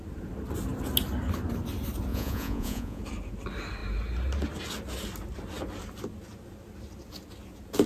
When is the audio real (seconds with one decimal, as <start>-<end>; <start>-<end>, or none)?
0.0-2.1; 3.0-7.9